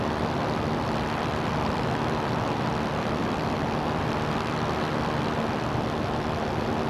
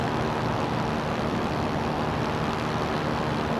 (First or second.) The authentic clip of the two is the second